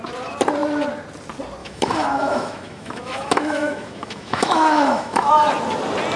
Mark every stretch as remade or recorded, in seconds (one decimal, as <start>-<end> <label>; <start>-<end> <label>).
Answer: 0.0-1.6 recorded; 1.6-5.3 remade; 5.3-6.2 recorded